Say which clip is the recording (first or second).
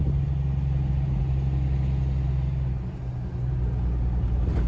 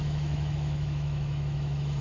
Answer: first